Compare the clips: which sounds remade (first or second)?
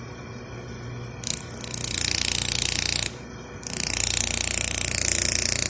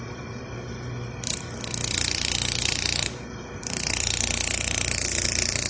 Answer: second